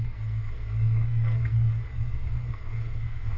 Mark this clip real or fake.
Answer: fake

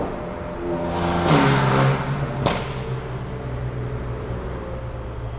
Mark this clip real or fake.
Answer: real